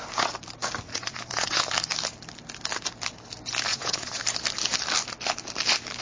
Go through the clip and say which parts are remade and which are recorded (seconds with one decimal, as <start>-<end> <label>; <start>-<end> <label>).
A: 0.0-0.9 recorded; 0.9-1.6 remade; 1.6-3.7 recorded; 3.7-4.2 remade; 4.2-6.0 recorded